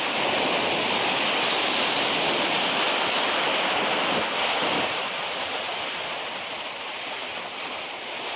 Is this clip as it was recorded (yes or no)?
yes